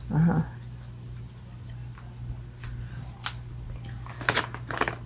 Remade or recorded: recorded